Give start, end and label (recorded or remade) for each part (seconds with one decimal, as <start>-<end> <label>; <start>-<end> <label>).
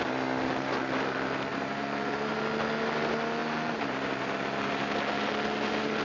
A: 0.0-1.5 recorded; 1.5-2.3 remade; 2.3-3.4 recorded; 3.4-4.2 remade; 4.2-6.0 recorded